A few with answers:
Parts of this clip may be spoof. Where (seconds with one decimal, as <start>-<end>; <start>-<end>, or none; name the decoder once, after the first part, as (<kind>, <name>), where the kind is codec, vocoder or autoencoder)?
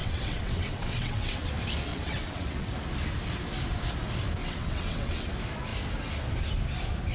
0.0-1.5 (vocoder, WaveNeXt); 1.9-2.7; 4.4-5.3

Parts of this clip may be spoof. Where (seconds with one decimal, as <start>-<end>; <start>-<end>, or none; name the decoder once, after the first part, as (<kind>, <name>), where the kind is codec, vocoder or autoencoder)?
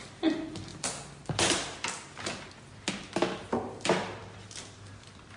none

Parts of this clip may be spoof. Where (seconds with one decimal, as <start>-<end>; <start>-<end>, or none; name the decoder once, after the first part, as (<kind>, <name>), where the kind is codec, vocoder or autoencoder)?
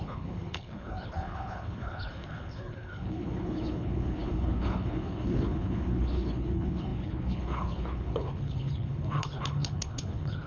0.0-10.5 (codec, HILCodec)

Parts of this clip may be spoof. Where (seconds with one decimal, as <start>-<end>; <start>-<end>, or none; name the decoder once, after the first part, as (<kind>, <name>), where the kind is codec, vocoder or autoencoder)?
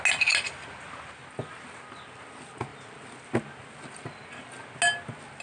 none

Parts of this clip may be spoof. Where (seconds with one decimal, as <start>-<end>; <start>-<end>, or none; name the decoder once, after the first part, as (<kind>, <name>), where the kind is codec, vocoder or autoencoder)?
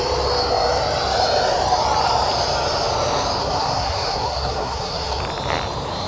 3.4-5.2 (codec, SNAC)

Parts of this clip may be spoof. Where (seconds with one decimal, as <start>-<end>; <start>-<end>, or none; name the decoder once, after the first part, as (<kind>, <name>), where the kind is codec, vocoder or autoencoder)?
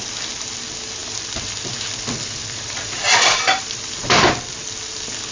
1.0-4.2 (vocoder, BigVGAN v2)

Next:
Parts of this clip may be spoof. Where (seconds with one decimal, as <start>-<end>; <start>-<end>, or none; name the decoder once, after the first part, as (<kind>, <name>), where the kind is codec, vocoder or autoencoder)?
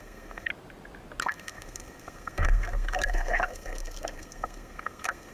0.0-0.5 (codec, SNAC); 1.2-5.3